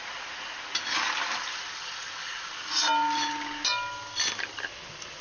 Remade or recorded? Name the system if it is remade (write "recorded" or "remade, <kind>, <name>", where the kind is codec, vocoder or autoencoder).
recorded